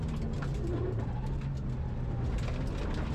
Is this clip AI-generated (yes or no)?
no